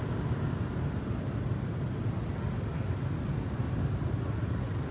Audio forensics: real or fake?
real